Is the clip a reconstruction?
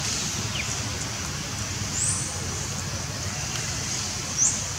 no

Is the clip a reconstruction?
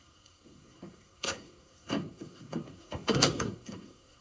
yes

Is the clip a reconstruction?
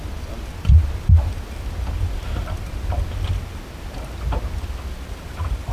no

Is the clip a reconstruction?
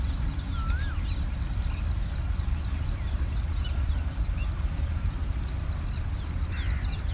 no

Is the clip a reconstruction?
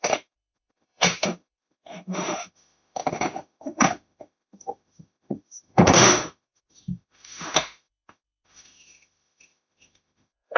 yes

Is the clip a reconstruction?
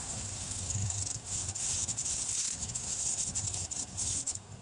yes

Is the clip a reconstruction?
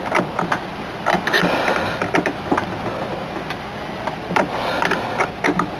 no